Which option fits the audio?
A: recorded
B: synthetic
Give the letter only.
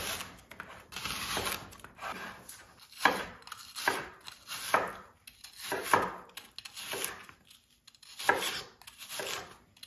A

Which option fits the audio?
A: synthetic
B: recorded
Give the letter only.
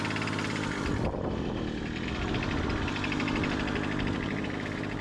B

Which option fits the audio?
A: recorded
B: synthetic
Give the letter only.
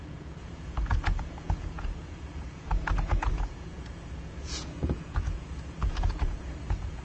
B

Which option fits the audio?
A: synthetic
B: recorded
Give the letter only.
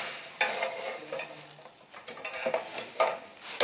B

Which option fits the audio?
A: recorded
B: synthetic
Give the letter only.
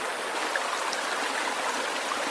A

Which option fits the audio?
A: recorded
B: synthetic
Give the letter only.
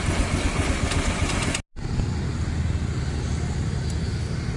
A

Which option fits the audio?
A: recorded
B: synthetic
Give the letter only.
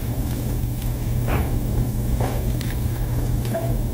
B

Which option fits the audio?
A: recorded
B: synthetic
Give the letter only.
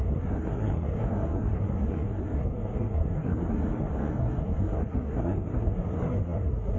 B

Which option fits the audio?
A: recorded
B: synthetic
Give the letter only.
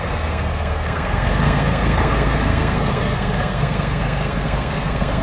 B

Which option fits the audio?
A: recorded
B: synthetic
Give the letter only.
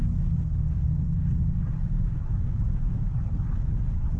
A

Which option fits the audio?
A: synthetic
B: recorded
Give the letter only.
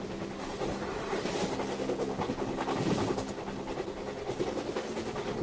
B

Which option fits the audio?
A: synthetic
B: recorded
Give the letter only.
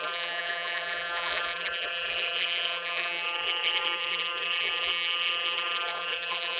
A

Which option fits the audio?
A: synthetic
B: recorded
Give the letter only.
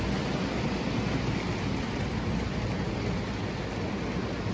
B